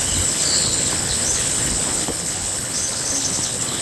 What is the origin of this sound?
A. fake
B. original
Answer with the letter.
A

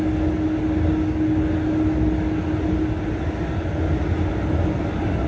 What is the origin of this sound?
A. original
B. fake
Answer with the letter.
A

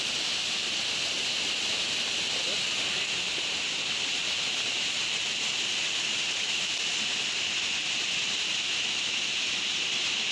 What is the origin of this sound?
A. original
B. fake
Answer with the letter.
A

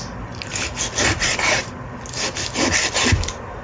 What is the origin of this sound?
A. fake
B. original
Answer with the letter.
B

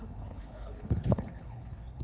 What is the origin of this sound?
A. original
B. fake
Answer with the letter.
B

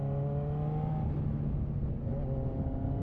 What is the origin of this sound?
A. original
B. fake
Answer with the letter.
A